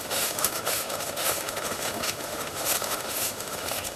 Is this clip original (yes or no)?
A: no